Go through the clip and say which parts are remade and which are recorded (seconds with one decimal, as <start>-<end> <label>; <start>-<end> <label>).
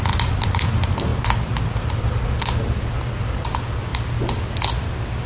0.0-5.3 recorded